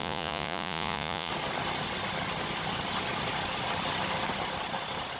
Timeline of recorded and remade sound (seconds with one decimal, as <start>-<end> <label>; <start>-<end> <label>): 0.0-1.3 remade; 1.3-5.2 recorded